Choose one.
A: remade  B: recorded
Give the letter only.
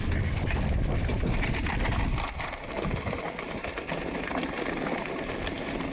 B